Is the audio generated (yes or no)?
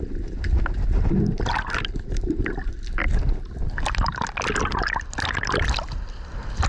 no